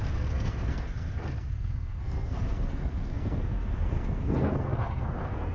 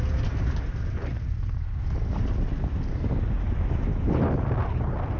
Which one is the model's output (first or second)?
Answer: first